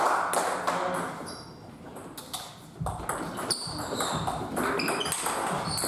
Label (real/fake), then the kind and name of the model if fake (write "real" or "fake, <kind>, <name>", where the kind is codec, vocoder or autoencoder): real